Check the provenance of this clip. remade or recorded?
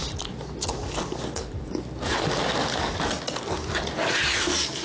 recorded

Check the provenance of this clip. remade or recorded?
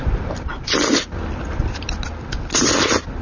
recorded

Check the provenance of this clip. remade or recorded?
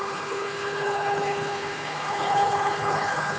remade